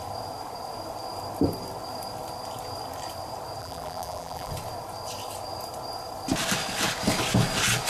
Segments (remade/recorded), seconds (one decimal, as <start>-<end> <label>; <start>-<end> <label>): 0.0-3.6 recorded; 3.6-4.5 remade; 4.5-7.9 recorded